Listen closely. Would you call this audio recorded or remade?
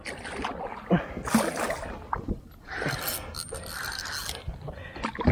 recorded